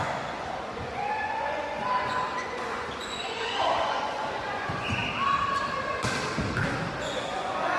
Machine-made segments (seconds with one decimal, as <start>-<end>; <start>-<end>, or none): 0.0-5.0; 7.0-7.8